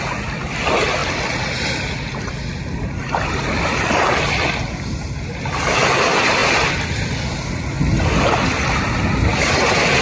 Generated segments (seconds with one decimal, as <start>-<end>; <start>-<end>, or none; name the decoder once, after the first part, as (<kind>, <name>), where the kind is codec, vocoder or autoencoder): 1.0-4.3 (vocoder, BigVGAN v2)